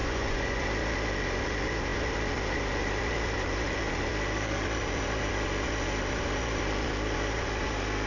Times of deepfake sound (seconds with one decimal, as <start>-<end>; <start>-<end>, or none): 0.0-0.6